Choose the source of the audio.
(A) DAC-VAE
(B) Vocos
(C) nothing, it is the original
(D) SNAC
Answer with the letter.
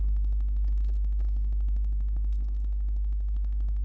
D